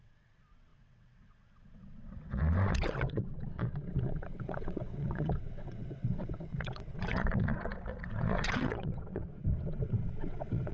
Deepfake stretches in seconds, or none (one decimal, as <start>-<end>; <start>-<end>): 0.0-10.7